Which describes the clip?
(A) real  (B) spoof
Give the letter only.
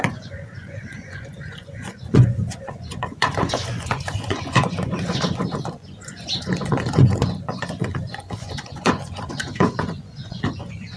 B